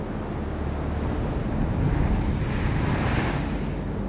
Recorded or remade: recorded